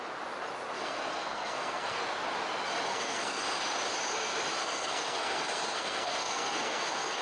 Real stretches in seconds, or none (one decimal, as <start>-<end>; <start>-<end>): 0.0-0.8; 2.0-2.9; 3.4-4.6